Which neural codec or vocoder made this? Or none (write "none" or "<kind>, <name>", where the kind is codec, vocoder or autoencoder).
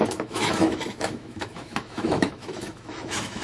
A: autoencoder, DAC-VAE